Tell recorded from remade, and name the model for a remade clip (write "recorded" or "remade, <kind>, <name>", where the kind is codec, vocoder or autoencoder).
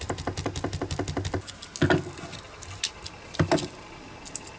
recorded